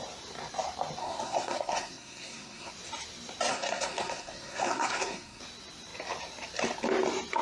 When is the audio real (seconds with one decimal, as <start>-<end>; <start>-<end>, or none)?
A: 0.0-1.0; 2.7-3.5; 5.4-7.4